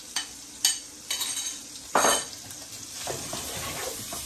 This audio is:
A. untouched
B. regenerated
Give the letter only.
A